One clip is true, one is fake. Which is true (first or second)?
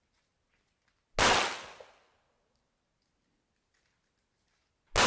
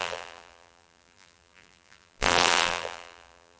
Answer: first